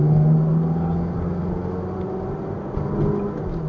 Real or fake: real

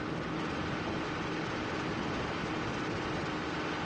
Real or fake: real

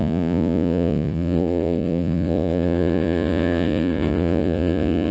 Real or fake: fake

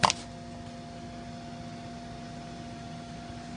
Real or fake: real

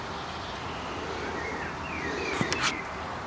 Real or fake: real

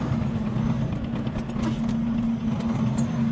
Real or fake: real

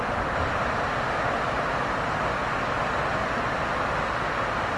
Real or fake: real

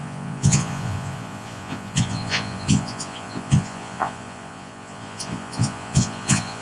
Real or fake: fake